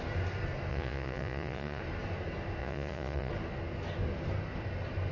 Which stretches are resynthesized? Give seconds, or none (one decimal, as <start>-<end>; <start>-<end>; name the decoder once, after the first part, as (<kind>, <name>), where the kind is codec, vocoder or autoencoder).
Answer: 0.7-1.8 (vocoder, Vocos); 2.6-3.3